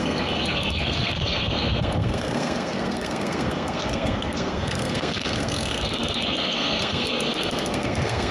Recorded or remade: remade